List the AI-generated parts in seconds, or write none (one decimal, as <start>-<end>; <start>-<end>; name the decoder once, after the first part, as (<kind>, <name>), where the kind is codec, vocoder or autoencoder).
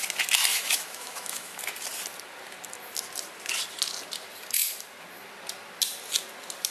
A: 0.5-1.6 (autoencoder, DAC-VAE)